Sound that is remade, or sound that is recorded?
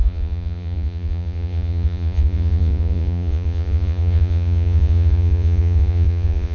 remade